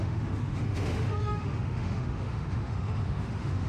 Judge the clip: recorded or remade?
remade